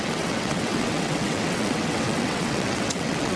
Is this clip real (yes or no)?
no